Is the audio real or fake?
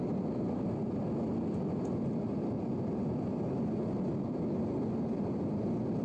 real